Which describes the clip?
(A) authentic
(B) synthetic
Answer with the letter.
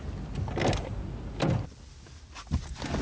A